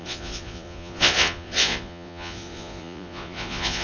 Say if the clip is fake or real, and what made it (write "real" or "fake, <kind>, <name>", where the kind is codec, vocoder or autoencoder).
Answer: fake, vocoder, Vocos